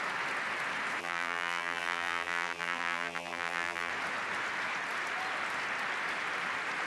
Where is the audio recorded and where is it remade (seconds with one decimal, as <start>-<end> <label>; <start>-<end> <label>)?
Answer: 0.0-1.0 recorded; 1.0-3.9 remade; 3.9-6.9 recorded

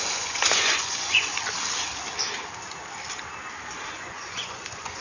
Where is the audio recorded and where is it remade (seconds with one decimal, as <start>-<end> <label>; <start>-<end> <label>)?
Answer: 0.0-1.3 remade; 1.3-3.9 recorded; 3.9-5.0 remade

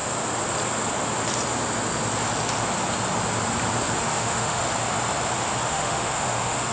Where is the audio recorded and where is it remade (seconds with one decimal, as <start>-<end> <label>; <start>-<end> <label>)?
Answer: 0.0-4.0 recorded; 4.0-4.6 remade; 4.6-5.7 recorded; 5.7-6.7 remade

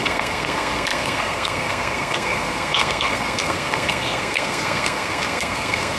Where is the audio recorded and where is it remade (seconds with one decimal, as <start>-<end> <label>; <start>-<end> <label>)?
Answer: 0.0-6.0 remade

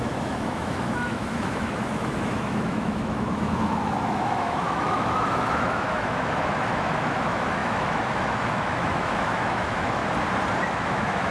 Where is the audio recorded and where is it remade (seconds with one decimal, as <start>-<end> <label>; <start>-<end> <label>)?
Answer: 0.0-10.0 remade; 10.0-10.7 recorded; 10.7-11.3 remade

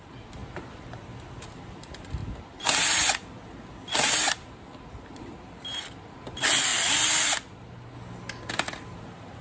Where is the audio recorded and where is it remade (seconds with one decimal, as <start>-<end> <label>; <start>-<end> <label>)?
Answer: 0.0-0.4 remade; 0.4-1.3 recorded; 1.3-2.2 remade; 2.2-5.0 recorded; 5.0-6.7 remade; 6.7-8.5 recorded; 8.5-9.4 remade